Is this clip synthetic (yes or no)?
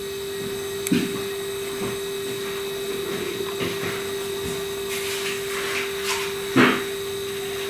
no